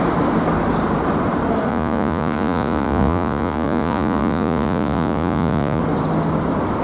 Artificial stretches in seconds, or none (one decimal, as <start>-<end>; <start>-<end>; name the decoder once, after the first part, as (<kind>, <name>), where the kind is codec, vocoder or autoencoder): 1.7-5.8 (vocoder, Vocos)

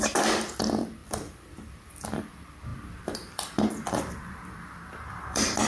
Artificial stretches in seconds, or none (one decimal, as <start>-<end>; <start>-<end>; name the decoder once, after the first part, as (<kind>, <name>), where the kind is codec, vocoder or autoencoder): 0.0-5.7 (vocoder, BigVGAN v2)

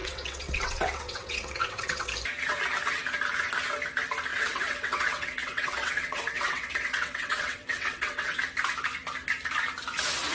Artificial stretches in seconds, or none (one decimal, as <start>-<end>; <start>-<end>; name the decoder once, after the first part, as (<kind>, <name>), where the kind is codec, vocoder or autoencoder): 0.0-2.1 (vocoder, WaveNeXt); 4.3-8.4

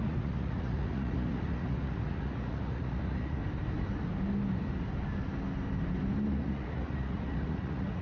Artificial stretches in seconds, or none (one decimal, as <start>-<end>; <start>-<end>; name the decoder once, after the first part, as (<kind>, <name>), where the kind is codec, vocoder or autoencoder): 0.0-3.4 (vocoder, Vocos); 6.3-8.0

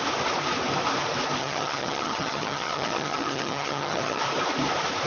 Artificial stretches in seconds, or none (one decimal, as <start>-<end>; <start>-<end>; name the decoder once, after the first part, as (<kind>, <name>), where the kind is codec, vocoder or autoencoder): 1.4-4.2 (vocoder, HiFi-GAN)